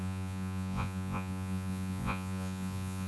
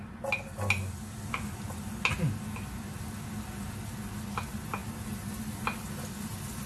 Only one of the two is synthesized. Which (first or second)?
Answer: first